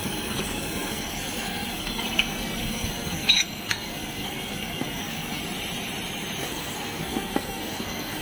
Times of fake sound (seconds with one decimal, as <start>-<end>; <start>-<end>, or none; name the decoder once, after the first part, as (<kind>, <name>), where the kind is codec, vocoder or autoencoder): 0.0-5.4 (codec, SNAC); 6.4-8.2